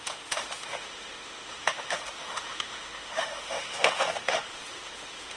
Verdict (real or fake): fake